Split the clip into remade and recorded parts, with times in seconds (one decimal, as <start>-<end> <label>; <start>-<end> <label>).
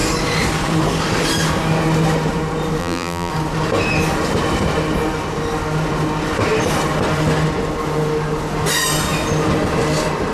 0.0-2.8 recorded; 2.8-3.3 remade; 3.3-10.3 recorded